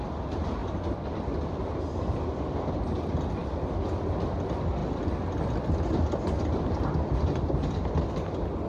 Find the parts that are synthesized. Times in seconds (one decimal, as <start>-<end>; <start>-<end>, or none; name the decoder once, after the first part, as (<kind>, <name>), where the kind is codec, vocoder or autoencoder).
none